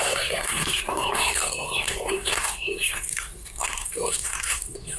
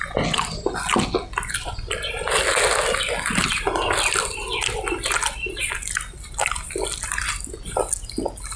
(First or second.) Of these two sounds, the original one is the second